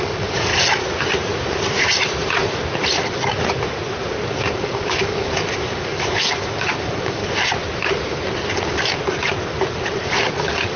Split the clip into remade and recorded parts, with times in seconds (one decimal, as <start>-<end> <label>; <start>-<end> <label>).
0.0-0.5 remade; 0.5-4.3 recorded; 4.3-7.2 remade; 7.2-10.3 recorded; 10.3-10.8 remade